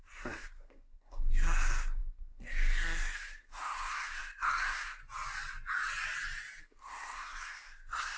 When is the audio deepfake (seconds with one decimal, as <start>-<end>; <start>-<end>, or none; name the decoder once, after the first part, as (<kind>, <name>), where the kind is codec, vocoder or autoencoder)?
0.0-5.0 (codec, SNAC); 6.6-8.2